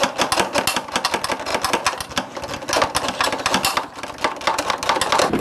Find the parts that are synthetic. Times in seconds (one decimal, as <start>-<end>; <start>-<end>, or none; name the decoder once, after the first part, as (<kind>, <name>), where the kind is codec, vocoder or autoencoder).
none